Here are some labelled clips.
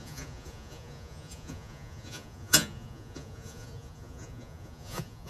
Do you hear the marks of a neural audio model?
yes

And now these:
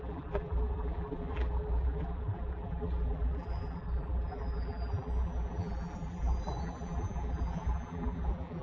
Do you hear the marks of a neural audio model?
yes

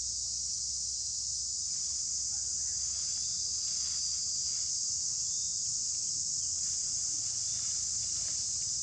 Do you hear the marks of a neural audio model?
yes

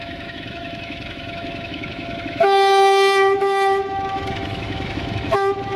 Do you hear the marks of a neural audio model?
yes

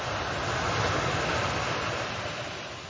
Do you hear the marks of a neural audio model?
no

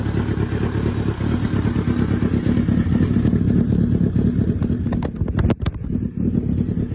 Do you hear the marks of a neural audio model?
no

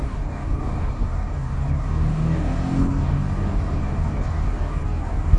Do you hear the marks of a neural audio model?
yes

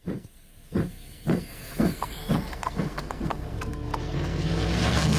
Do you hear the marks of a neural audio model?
yes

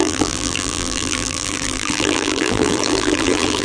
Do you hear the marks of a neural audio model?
yes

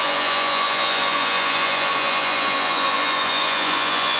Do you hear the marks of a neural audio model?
yes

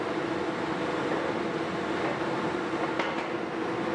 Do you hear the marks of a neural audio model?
no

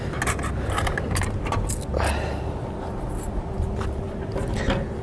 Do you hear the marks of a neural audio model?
no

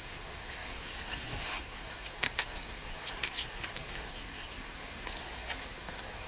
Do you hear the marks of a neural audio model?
yes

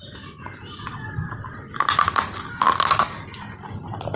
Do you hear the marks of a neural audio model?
no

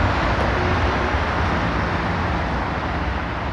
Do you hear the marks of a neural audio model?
no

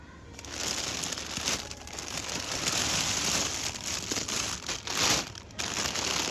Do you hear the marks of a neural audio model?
no